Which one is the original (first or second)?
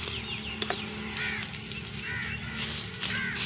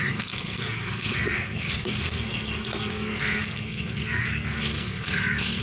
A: first